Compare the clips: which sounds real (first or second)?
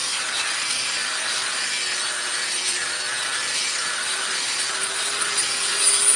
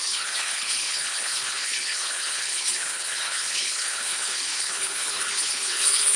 first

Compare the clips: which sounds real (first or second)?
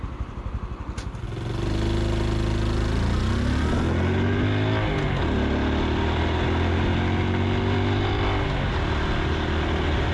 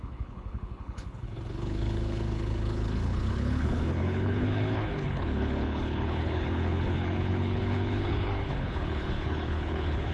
first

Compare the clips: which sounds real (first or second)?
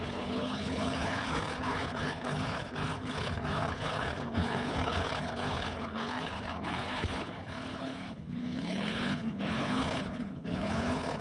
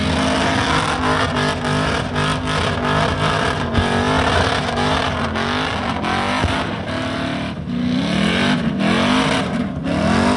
second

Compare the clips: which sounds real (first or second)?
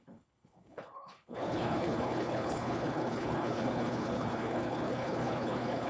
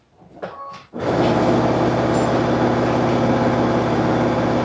second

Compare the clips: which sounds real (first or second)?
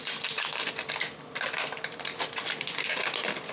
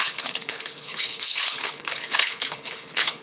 first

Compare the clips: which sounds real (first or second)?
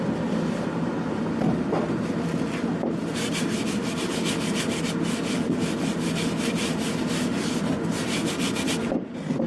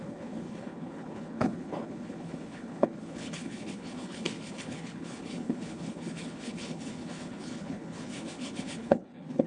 first